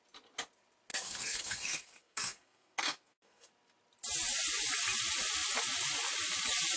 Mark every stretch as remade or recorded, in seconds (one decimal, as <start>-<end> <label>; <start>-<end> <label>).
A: 0.0-0.9 recorded; 0.9-3.5 remade; 3.5-6.8 recorded